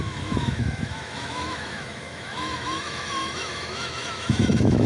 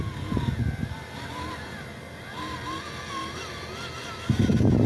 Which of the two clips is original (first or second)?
second